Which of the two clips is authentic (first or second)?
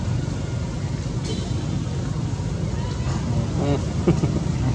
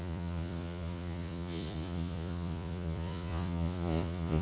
first